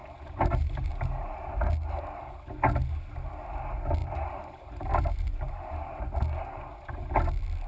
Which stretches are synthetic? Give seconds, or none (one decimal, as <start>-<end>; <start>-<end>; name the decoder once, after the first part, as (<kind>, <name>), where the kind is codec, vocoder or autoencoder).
0.0-1.6 (vocoder, BigVGAN v2); 4.0-6.0